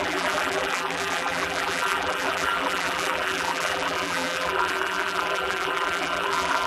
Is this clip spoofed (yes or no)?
yes